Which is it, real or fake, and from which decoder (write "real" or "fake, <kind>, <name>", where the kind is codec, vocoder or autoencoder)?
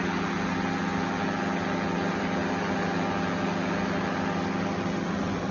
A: real